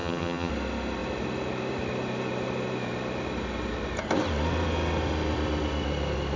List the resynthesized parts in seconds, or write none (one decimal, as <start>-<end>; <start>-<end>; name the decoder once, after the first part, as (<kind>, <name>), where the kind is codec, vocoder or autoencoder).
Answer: 0.0-0.5 (vocoder, HiFi-GAN)